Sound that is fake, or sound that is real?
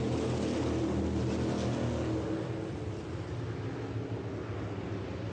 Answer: real